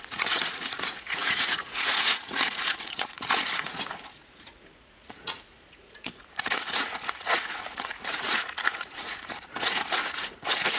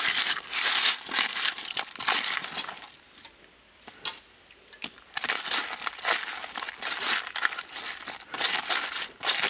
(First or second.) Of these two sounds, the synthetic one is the first